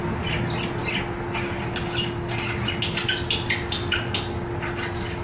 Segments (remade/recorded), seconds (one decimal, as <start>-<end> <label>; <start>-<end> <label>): 0.0-5.2 recorded